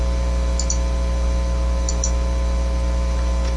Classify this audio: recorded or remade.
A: recorded